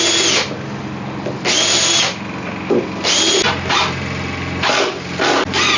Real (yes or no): yes